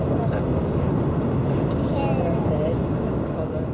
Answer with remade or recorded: recorded